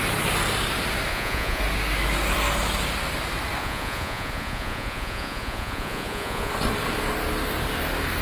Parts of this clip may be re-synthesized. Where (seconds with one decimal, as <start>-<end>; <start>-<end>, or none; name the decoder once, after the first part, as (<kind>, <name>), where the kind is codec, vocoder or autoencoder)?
1.1-1.6 (vocoder, Vocos); 3.6-6.5